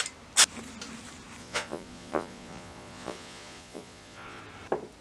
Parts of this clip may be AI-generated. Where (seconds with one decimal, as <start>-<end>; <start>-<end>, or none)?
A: 1.4-4.4